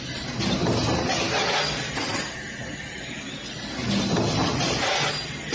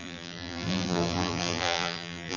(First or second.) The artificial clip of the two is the second